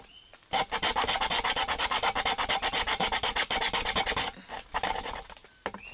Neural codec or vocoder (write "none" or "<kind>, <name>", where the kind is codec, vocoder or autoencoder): none